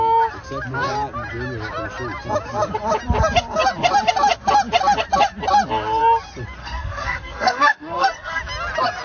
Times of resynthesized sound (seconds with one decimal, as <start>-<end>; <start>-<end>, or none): 6.6-8.4